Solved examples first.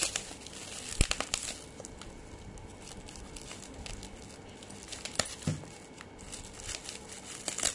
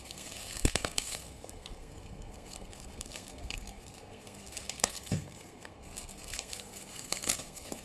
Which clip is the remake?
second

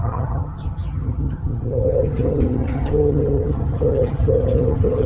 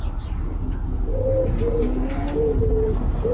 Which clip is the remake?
first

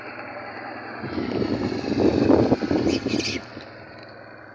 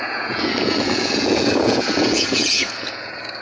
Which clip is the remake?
second